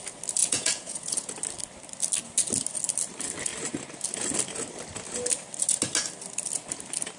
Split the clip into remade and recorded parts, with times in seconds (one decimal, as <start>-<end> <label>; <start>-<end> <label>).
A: 0.0-0.4 recorded; 0.4-1.3 remade; 1.3-7.2 recorded